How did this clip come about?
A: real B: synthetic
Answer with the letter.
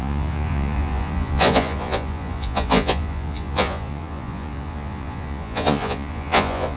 B